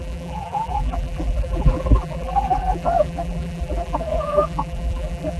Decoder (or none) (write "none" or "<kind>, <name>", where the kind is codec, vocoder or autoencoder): vocoder, BigVGAN v2